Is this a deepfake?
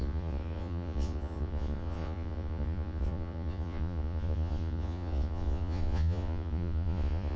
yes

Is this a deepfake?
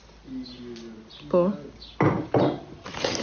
no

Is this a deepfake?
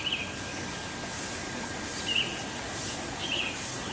no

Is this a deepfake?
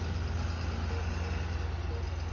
no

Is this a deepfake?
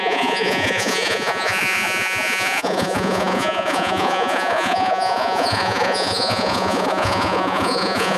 yes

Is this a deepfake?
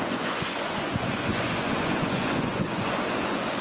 yes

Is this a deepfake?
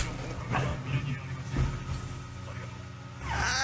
no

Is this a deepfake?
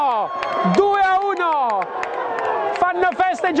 no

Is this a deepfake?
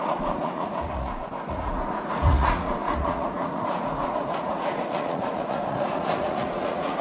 yes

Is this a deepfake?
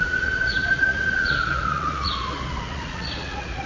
yes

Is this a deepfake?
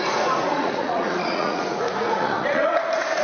yes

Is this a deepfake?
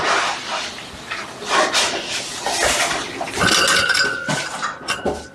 no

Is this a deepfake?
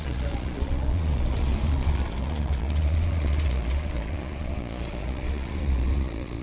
yes